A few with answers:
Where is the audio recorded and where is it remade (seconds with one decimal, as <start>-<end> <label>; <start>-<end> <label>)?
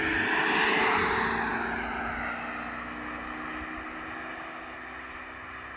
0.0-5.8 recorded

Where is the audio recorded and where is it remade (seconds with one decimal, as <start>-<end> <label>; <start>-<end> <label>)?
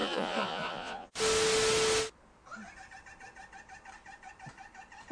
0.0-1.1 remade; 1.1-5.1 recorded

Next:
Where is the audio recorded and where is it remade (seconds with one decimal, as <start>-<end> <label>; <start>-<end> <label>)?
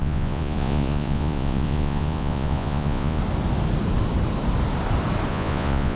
0.0-3.2 remade; 3.2-5.3 recorded; 5.3-6.0 remade